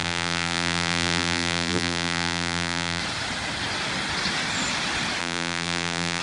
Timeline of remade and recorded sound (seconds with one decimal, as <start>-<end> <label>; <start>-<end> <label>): 0.0-3.0 remade; 3.0-5.2 recorded; 5.2-6.2 remade